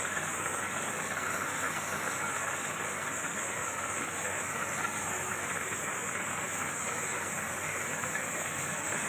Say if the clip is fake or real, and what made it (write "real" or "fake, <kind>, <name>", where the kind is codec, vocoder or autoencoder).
fake, codec, SNAC